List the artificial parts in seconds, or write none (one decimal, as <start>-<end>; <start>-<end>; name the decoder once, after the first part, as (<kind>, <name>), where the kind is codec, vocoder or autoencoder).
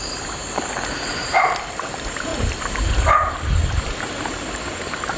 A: 0.0-0.4 (vocoder, BigVGAN v2); 0.9-2.3; 3.3-5.2